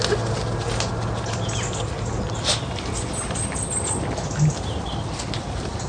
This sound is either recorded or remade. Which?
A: recorded